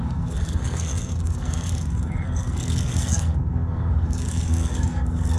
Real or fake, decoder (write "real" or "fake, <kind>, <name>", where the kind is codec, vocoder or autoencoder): fake, codec, SNAC